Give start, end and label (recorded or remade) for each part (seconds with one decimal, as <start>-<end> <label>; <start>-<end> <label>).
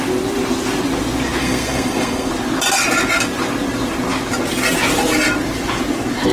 0.0-1.4 recorded; 1.4-2.3 remade; 2.3-6.3 recorded